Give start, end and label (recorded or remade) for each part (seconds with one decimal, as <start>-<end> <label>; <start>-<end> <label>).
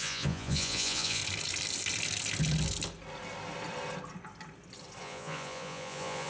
0.0-1.2 remade; 1.2-5.0 recorded; 5.0-6.3 remade